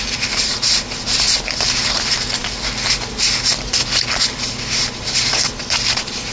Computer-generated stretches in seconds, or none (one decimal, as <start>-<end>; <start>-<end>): none